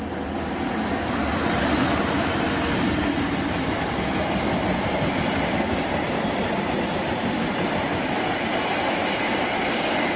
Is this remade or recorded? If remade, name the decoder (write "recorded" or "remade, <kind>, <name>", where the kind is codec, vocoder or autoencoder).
recorded